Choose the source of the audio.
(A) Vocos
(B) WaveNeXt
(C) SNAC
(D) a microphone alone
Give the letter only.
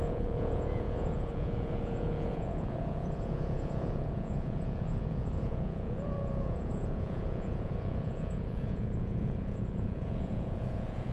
A